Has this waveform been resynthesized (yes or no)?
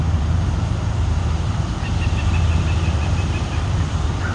yes